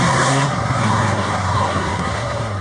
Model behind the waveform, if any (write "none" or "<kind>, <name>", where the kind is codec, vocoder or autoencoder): codec, SNAC